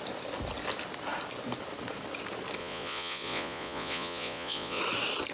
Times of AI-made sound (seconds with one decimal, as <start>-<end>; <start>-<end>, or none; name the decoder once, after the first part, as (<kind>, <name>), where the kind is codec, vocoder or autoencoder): 2.6-4.8 (vocoder, Vocos)